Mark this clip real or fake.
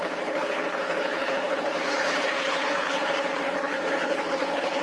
fake